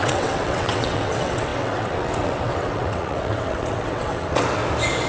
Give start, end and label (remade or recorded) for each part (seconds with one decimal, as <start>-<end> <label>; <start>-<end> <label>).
0.0-4.6 remade; 4.6-5.1 recorded